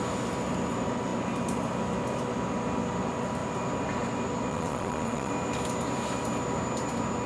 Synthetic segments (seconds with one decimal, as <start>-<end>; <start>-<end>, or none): 4.5-5.3